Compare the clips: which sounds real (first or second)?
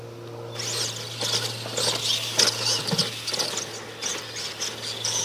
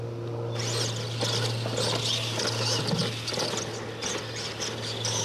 first